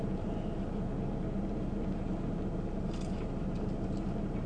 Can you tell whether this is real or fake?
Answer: real